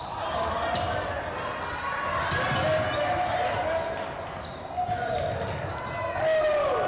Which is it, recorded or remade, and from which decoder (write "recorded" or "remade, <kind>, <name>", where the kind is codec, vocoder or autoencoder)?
recorded